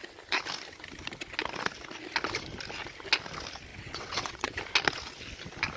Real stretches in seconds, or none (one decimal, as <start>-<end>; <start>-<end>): 0.0-3.7; 4.6-5.8